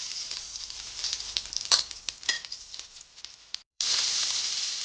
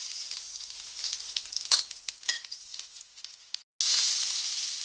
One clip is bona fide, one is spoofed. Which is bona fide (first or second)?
second